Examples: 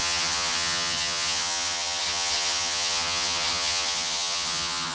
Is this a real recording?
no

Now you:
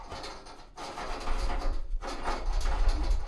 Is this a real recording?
yes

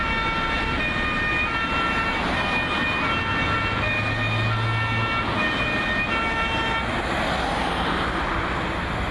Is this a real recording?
yes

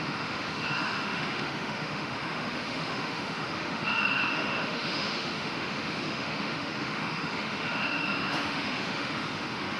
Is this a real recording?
no